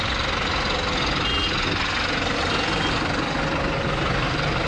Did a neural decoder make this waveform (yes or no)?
no